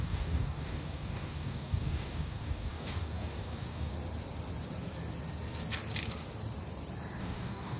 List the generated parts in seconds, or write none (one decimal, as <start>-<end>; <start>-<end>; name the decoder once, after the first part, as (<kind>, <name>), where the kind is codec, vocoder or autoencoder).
0.0-3.9 (codec, DAC); 7.2-7.8